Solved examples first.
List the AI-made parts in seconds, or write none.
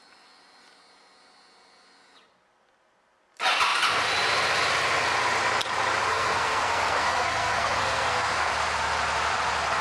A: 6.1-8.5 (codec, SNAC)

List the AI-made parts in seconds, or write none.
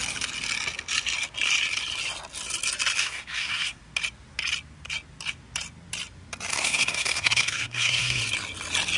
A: 3.0-3.8 (codec, SNAC); 6.5-8.2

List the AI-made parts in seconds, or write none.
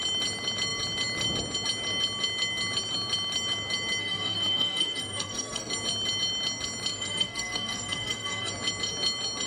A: 4.0-5.7 (codec, SNAC); 6.9-8.5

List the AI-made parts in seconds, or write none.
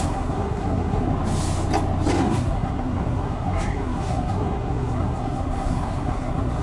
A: 0.0-1.1 (codec, SNAC); 2.1-6.6